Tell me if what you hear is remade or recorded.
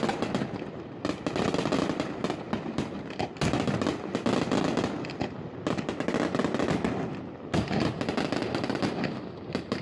recorded